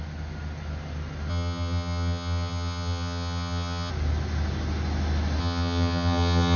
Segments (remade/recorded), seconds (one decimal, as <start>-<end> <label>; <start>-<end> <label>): 0.0-1.3 recorded; 1.3-3.9 remade; 3.9-5.4 recorded; 5.4-6.6 remade